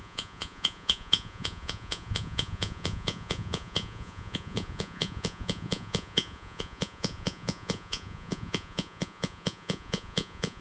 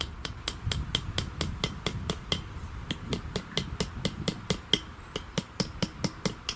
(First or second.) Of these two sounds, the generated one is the first